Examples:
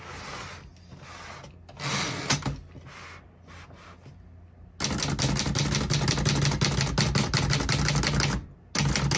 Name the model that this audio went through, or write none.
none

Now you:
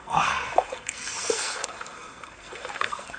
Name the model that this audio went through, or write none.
codec, SNAC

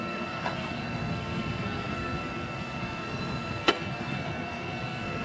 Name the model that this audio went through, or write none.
codec, SNAC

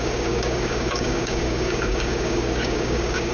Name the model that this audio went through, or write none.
codec, DAC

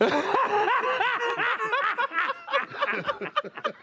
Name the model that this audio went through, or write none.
none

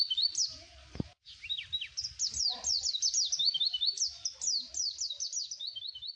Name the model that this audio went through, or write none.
none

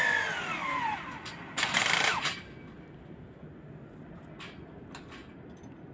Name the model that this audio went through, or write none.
none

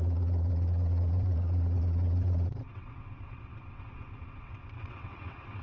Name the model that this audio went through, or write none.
vocoder, WaveNeXt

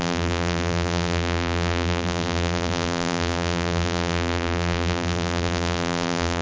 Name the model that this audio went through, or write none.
vocoder, BigVGAN v2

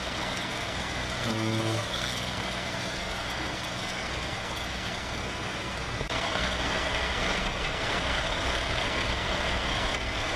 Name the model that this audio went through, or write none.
codec, SNAC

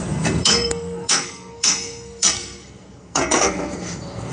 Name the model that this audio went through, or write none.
codec, SNAC